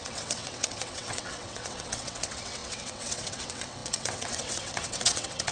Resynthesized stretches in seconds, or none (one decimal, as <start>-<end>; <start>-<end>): 0.0-5.5